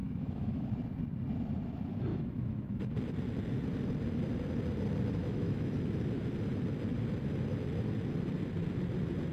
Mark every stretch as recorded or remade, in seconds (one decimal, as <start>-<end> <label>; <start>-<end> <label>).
0.0-0.7 remade; 0.7-2.1 recorded; 2.1-2.8 remade; 2.8-5.2 recorded; 5.2-5.7 remade; 5.7-9.3 recorded